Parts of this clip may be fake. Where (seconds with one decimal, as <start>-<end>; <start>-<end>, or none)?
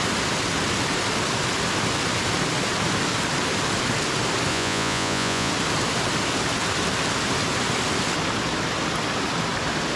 4.5-5.5